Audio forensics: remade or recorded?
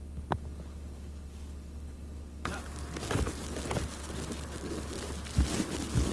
recorded